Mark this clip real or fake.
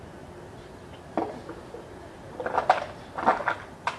real